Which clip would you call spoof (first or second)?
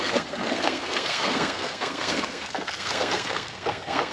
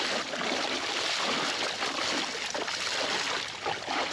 first